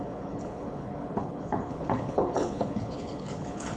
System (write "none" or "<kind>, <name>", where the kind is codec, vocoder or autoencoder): codec, HILCodec